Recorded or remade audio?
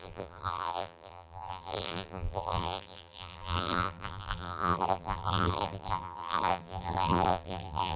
remade